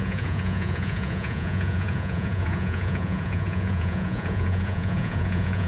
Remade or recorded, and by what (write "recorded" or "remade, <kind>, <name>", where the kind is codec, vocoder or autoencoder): remade, vocoder, Vocos